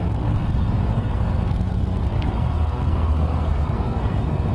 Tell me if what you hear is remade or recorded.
remade